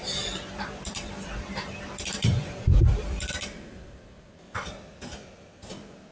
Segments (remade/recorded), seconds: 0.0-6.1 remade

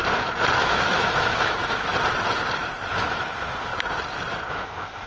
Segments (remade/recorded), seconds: 0.0-0.6 recorded; 0.6-1.9 remade; 1.9-2.9 recorded; 2.9-3.7 remade; 3.7-4.5 recorded; 4.5-5.1 remade

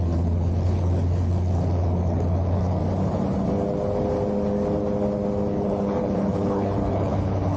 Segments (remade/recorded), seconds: 0.0-2.8 remade; 2.8-5.5 recorded; 5.5-7.6 remade

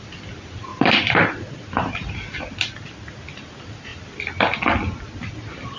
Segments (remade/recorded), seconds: 0.0-0.7 recorded; 0.7-2.6 remade; 2.6-5.8 recorded

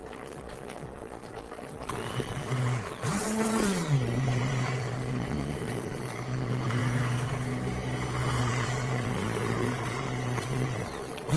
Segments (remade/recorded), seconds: 0.0-6.8 remade; 6.8-8.4 recorded; 8.4-11.4 remade